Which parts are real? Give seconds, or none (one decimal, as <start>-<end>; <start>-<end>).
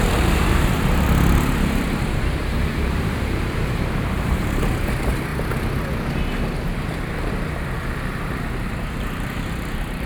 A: 5.3-8.7